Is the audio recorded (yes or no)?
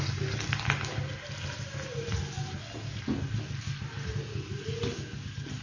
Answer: yes